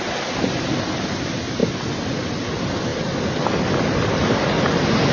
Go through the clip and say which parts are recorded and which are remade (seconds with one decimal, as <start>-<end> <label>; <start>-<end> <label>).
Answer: 0.0-5.1 recorded